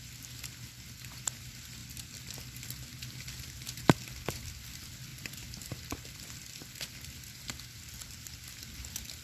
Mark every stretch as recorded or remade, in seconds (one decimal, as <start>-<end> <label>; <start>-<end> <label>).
0.0-1.8 recorded; 1.8-2.4 remade; 2.4-5.1 recorded; 5.1-6.9 remade; 6.9-9.2 recorded